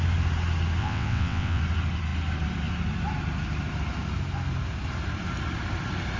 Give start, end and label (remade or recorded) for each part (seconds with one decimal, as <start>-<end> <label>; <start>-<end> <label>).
0.0-0.8 recorded; 0.8-1.6 remade; 1.6-6.2 recorded